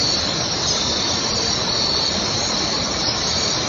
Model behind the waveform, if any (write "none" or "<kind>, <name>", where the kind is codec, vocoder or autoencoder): none